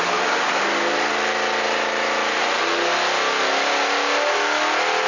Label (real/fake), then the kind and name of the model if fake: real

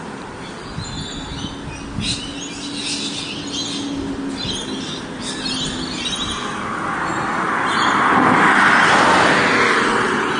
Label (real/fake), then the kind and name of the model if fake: real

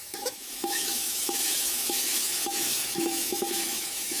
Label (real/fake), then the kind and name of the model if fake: fake, autoencoder, DAC-VAE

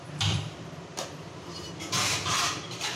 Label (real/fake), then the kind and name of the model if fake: fake, vocoder, BigVGAN v2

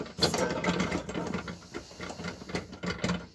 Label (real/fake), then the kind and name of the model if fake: real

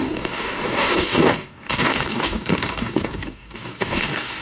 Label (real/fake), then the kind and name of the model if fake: fake, codec, DAC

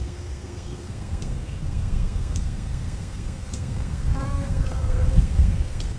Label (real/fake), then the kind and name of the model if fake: fake, codec, SNAC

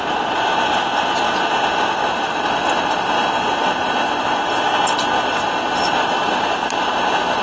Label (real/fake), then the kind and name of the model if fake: real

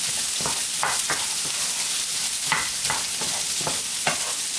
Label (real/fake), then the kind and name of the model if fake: fake, vocoder, BigVGAN v2